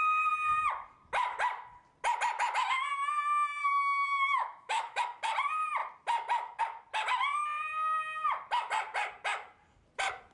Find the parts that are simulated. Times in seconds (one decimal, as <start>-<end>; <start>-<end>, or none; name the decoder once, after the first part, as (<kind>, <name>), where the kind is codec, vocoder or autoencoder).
3.6-5.0 (autoencoder, DAC-VAE)